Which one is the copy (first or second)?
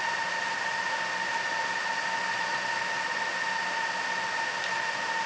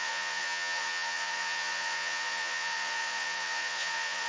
second